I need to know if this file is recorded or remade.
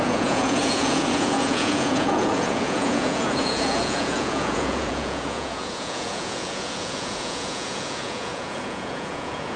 remade